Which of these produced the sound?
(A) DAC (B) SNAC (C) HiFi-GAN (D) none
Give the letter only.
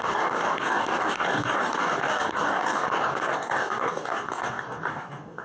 A